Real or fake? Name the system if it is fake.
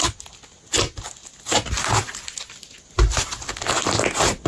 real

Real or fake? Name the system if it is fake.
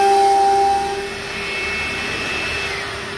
real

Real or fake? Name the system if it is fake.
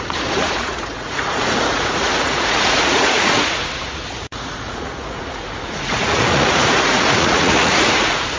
fake, vocoder, Vocos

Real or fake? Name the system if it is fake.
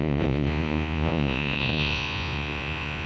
fake, vocoder, Vocos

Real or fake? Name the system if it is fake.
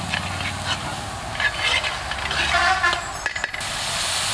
real